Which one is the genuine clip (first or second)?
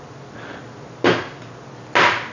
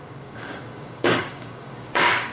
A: first